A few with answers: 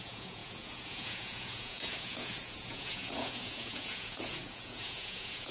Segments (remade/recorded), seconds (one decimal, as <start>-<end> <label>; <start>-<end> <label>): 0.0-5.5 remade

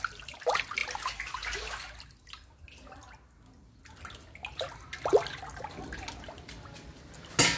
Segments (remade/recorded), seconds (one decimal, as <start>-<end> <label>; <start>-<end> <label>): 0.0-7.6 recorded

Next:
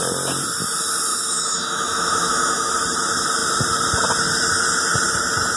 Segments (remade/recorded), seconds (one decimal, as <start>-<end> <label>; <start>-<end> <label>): 0.0-1.1 recorded; 1.1-2.7 remade; 2.7-5.6 recorded